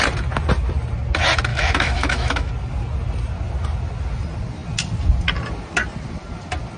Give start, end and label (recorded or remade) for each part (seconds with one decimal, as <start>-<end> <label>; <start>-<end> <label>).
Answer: 0.0-1.5 recorded; 1.5-2.5 remade; 2.5-6.8 recorded